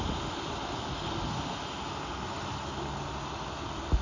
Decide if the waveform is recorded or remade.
recorded